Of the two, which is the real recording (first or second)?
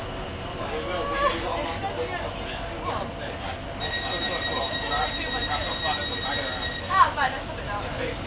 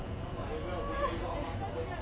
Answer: first